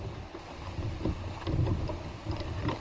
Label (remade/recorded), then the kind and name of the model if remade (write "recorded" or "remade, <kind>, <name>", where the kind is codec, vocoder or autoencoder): recorded